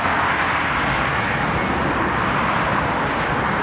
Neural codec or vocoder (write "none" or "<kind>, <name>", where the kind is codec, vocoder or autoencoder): none